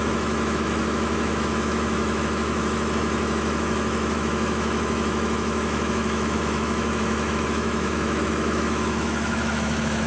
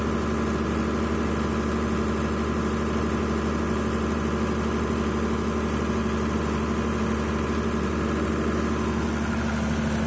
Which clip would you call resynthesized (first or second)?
first